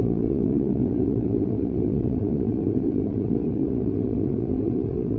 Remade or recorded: remade